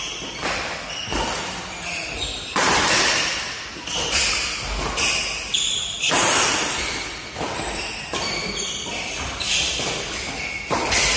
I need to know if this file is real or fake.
real